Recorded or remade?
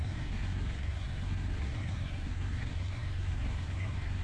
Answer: remade